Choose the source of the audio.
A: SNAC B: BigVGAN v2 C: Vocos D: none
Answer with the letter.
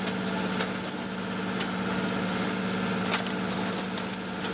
D